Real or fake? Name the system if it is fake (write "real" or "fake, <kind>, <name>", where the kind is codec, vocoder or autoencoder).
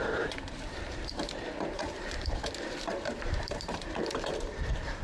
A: fake, vocoder, BigVGAN v2